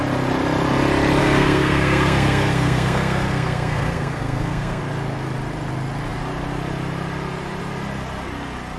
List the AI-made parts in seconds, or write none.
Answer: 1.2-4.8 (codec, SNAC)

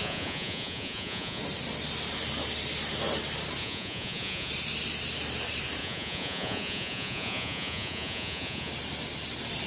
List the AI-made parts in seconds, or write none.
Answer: 0.0-1.4 (vocoder, Vocos); 3.6-4.5; 5.8-8.7